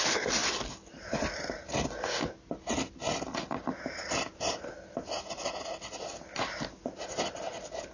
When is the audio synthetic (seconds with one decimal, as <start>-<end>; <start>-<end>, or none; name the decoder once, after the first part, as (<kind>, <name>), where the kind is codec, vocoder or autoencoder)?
none